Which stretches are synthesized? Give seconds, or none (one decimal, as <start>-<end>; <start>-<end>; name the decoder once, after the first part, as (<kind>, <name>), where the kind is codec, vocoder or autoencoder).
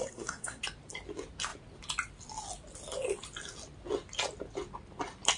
0.0-0.6 (codec, SNAC)